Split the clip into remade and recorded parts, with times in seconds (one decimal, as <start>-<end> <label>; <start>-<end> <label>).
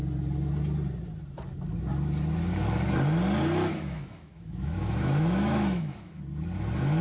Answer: 0.0-3.7 recorded; 3.7-6.2 remade; 6.2-7.0 recorded